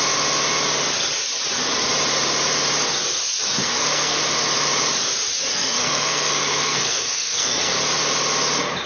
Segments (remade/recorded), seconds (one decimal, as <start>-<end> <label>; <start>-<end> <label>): 0.0-3.6 recorded; 3.6-4.2 remade; 4.2-5.5 recorded; 5.5-7.7 remade; 7.7-8.9 recorded